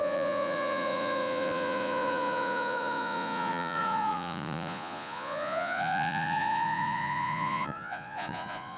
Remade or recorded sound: remade